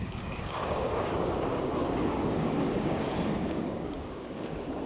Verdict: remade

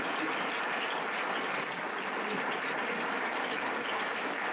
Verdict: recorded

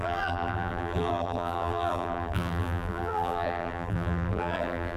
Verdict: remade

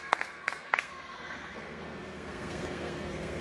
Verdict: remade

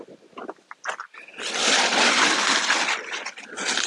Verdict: recorded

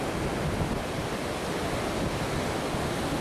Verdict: recorded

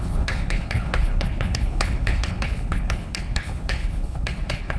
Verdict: remade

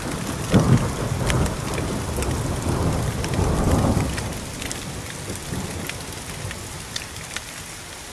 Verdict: recorded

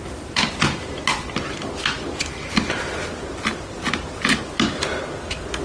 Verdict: recorded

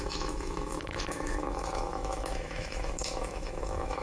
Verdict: remade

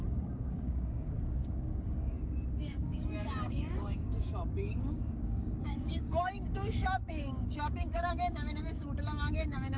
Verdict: remade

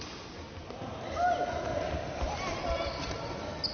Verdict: recorded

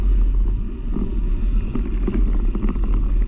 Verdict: recorded